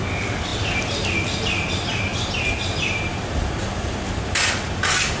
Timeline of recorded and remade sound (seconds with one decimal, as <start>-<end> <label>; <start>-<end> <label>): 0.0-5.2 recorded